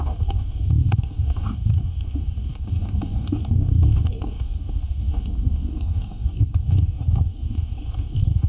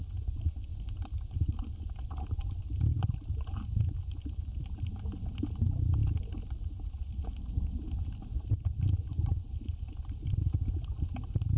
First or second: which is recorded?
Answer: second